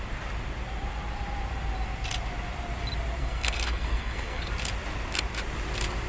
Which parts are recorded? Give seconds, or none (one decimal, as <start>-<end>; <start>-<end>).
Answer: 0.0-3.2; 4.5-6.1